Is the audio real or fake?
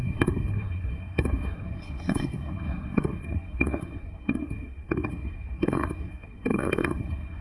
fake